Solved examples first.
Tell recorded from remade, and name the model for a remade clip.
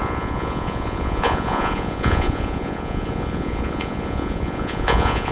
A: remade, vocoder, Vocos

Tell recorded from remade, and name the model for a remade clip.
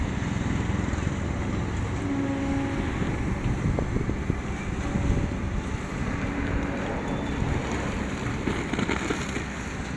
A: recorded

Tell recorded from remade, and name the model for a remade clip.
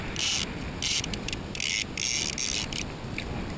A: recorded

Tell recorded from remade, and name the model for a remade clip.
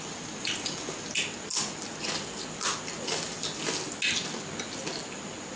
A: recorded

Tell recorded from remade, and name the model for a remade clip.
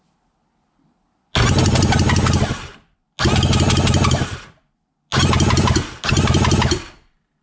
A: recorded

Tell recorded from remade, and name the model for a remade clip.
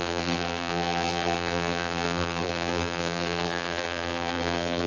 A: remade, vocoder, BigVGAN v2